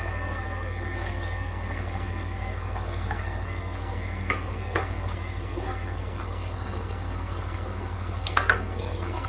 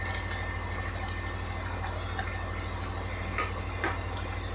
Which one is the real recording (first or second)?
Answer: second